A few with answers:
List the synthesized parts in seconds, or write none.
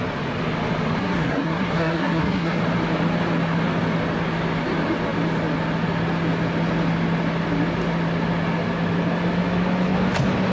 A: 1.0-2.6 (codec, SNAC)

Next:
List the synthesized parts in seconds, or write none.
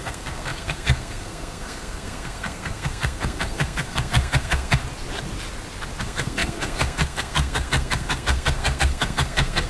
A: 0.0-4.8 (codec, SNAC); 6.0-9.7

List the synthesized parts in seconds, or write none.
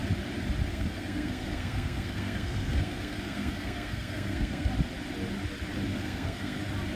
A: 0.7-4.7 (codec, SNAC); 5.9-6.6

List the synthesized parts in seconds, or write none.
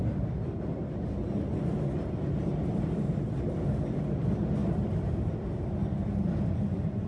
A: none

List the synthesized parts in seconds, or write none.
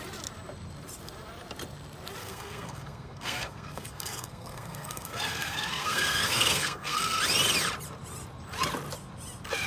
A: 2.2-7.2 (codec, SNAC)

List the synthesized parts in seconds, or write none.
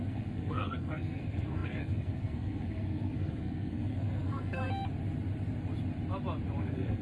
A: 0.0-4.6 (codec, SNAC); 6.6-7.0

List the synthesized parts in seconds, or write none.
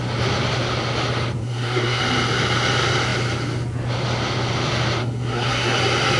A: 1.4-2.0 (codec, SNAC); 5.0-5.8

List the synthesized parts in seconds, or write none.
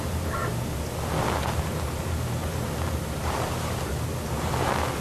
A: none